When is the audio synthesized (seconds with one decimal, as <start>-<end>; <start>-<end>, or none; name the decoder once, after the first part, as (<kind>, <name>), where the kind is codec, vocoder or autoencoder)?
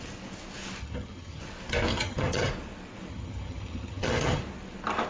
0.8-1.4 (vocoder, HiFi-GAN); 1.9-2.5; 3.1-4.4